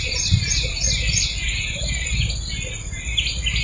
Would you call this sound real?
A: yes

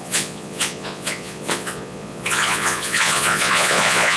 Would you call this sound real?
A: no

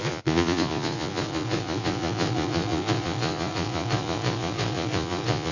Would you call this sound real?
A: no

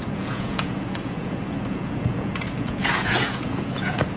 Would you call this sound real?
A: no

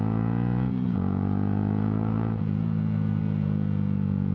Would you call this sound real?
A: no